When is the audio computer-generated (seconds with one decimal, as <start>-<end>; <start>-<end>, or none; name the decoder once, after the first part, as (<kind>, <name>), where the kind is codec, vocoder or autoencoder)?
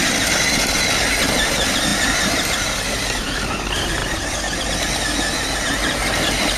none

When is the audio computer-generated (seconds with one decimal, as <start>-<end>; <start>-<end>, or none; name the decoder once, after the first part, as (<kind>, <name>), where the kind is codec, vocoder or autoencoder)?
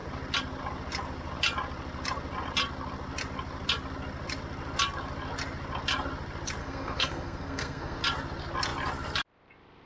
6.6-8.0 (codec, SNAC)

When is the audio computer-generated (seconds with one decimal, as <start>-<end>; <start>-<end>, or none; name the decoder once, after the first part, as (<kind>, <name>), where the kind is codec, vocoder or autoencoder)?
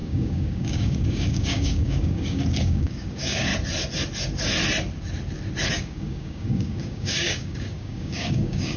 0.0-3.5 (codec, DAC); 5.7-8.8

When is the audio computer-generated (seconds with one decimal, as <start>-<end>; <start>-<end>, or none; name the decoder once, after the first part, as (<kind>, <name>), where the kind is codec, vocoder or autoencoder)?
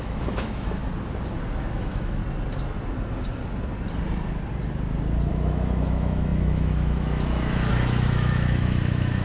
0.0-0.8 (autoencoder, DAC-VAE); 1.6-2.2; 5.3-9.2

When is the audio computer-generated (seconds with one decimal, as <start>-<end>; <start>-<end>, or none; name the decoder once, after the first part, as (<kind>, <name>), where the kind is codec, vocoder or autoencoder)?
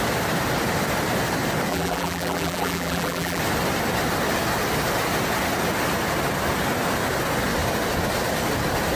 1.7-3.4 (vocoder, BigVGAN v2)